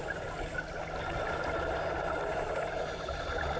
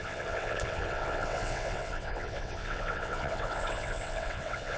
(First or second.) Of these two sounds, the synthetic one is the second